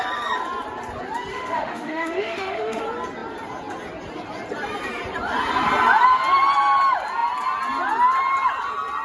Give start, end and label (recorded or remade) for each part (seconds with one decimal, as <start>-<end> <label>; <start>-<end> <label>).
0.0-1.3 recorded; 1.3-2.8 remade; 2.8-9.0 recorded

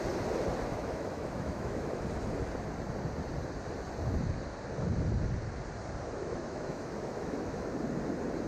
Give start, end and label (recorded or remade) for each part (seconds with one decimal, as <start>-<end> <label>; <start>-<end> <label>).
0.0-0.7 recorded; 0.7-2.0 remade; 2.0-6.2 recorded; 6.2-7.7 remade; 7.7-8.5 recorded

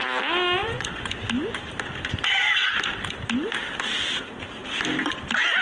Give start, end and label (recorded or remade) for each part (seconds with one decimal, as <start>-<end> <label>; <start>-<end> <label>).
0.0-0.6 recorded; 0.6-1.2 remade; 1.2-5.6 recorded

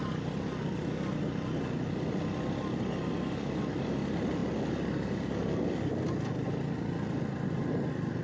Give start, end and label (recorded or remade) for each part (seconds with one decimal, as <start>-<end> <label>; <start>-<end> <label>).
0.0-8.2 recorded

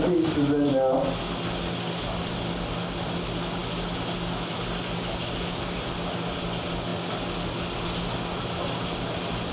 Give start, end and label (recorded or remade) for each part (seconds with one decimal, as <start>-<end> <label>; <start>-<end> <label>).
0.0-9.5 recorded

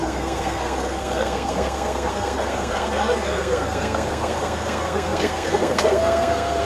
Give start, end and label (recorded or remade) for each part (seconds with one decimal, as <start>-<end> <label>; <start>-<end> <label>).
0.0-6.6 remade

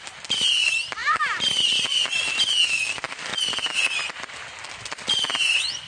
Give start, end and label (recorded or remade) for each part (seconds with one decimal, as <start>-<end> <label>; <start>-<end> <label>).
0.0-3.3 remade; 3.3-4.7 recorded; 4.7-5.9 remade